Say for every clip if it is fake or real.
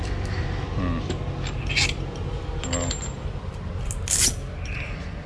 real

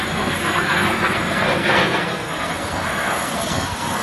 fake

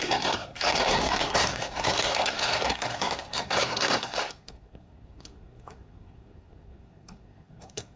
fake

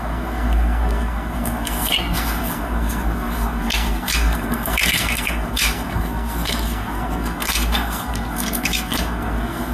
fake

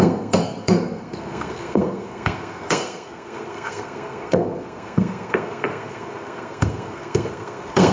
fake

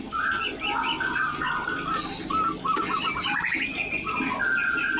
real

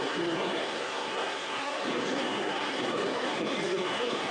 fake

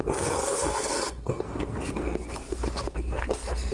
fake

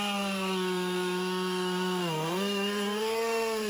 fake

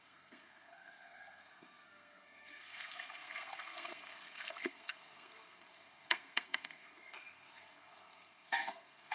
fake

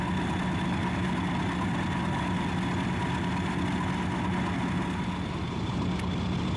real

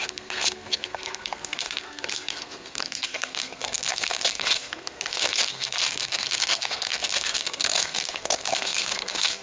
fake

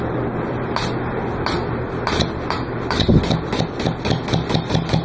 real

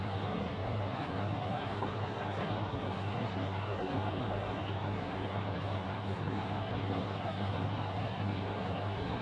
fake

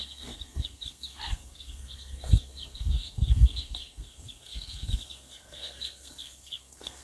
fake